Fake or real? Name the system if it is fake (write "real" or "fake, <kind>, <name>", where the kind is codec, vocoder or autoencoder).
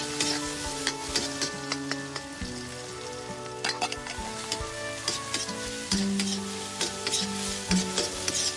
real